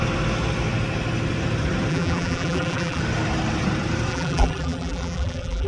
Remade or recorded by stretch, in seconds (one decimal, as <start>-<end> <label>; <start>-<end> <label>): 0.0-1.9 recorded; 1.9-3.0 remade; 3.0-4.1 recorded; 4.1-5.7 remade